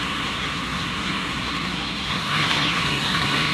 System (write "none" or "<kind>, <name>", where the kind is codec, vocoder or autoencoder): codec, SNAC